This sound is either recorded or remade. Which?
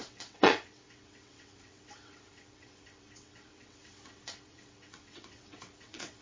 remade